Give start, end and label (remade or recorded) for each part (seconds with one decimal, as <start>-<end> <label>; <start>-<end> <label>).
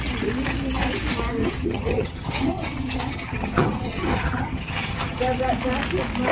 0.0-1.4 recorded; 1.4-5.2 remade; 5.2-6.3 recorded